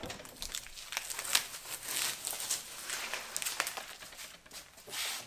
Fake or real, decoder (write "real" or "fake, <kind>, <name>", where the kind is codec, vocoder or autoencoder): real